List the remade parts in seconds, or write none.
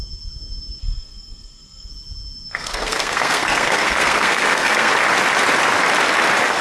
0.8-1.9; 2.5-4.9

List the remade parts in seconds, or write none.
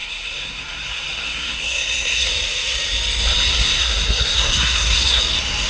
0.0-2.3; 3.5-5.2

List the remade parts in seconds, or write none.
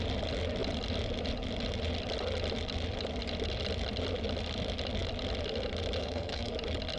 6.0-6.5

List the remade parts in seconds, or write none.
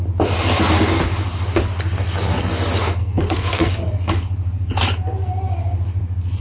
3.0-3.7